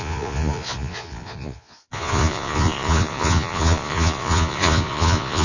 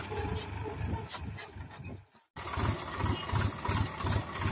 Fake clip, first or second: first